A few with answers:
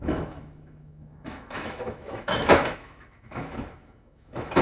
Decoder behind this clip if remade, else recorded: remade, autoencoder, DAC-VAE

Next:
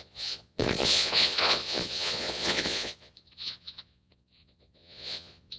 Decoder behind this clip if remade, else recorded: remade, vocoder, Vocos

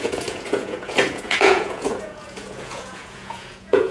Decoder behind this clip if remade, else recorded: remade, vocoder, Vocos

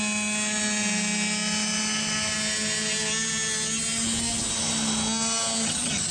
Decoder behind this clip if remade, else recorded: recorded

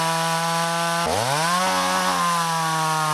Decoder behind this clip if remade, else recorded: recorded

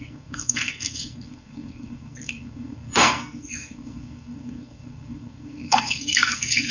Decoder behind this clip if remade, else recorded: remade, codec, SNAC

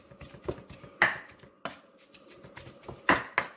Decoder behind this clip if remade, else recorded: recorded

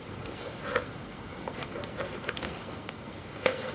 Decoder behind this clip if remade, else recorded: remade, codec, SNAC